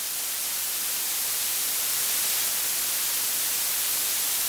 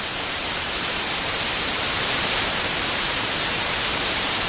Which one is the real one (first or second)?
first